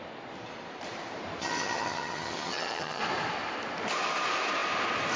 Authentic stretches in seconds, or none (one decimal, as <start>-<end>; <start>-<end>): 0.0-1.4; 3.0-5.2